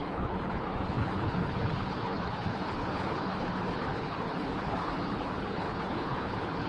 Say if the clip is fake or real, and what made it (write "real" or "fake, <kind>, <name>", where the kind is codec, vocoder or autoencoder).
fake, codec, HILCodec